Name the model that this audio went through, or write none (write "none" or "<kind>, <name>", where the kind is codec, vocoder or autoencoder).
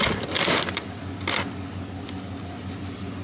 none